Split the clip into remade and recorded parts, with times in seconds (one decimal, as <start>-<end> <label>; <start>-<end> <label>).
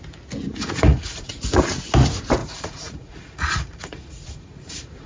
0.0-0.5 recorded; 0.5-1.3 remade; 1.3-2.4 recorded; 2.4-5.1 remade